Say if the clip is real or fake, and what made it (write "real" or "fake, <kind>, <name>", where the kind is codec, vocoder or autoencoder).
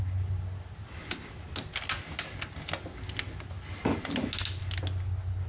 real